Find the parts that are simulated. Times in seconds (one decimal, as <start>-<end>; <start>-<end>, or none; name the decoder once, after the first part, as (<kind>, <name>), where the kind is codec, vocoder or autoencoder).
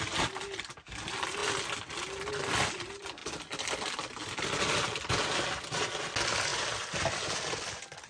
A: none